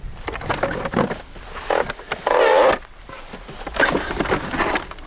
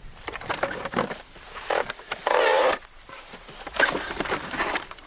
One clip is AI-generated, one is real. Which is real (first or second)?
first